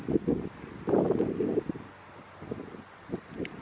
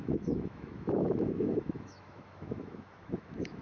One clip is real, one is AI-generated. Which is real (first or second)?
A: first